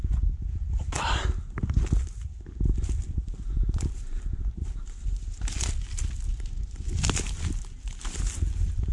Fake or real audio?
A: real